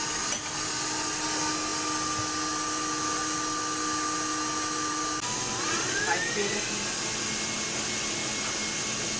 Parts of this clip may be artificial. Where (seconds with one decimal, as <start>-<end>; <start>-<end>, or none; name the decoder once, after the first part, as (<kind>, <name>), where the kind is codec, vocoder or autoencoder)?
none